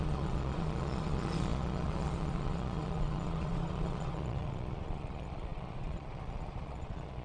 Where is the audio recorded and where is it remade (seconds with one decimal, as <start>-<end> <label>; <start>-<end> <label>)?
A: 0.0-7.2 remade